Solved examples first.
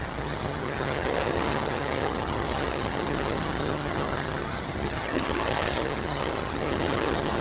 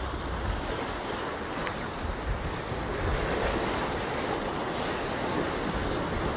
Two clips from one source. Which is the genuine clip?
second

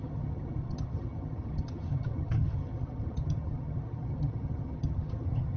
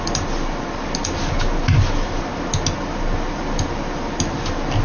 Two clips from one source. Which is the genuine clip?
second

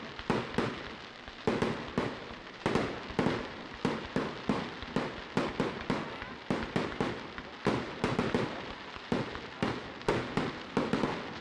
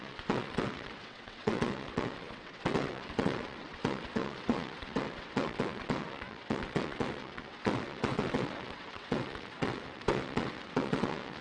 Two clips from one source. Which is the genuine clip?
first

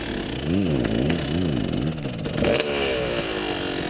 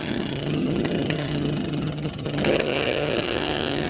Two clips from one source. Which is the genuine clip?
first